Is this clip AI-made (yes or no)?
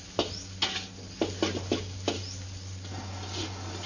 no